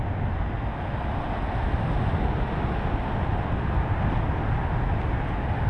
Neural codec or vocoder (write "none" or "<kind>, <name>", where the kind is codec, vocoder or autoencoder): none